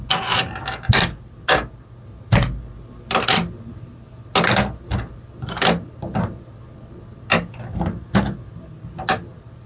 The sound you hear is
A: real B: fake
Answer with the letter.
A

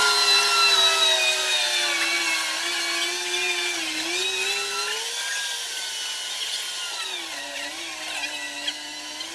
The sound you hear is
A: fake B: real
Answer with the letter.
B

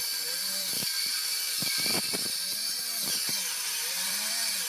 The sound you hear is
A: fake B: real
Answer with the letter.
A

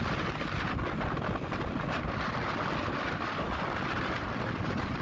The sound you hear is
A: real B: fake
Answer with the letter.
A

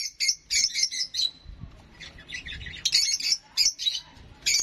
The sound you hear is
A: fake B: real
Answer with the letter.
B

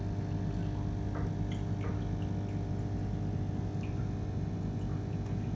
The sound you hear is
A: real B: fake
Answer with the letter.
A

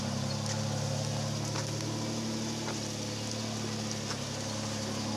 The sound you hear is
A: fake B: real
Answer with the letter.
B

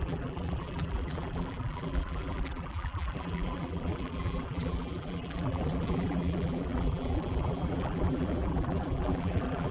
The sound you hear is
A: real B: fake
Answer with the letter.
B